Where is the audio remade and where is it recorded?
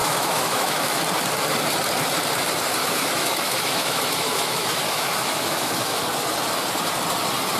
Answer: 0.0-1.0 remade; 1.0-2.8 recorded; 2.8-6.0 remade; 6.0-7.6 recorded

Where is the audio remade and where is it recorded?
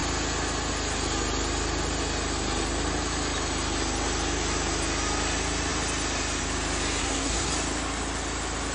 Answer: 0.0-7.0 recorded; 7.0-7.5 remade; 7.5-8.7 recorded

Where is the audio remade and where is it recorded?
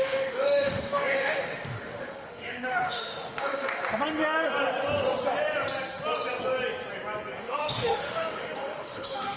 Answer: 0.0-3.8 remade; 3.8-7.4 recorded; 7.4-9.4 remade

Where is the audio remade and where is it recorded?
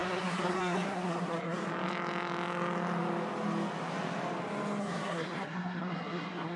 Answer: 0.0-1.6 remade; 1.6-4.8 recorded; 4.8-6.6 remade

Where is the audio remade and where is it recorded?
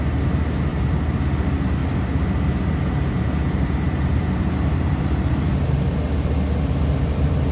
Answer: 0.0-0.7 recorded; 0.7-1.2 remade; 1.2-1.8 recorded; 1.8-5.9 remade; 5.9-7.5 recorded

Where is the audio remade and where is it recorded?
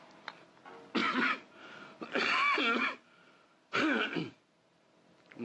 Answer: 0.0-5.4 recorded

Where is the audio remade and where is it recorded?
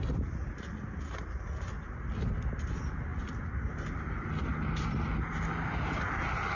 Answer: 0.0-6.6 recorded